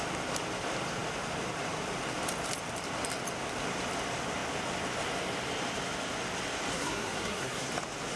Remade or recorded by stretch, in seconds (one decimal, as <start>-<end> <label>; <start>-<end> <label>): 0.0-6.7 recorded; 6.7-7.7 remade; 7.7-8.2 recorded